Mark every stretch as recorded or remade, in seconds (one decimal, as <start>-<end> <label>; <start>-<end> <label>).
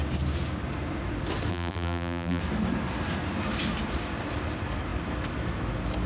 0.0-1.5 recorded; 1.5-2.4 remade; 2.4-6.1 recorded